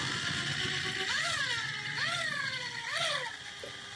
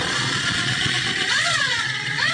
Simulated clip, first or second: second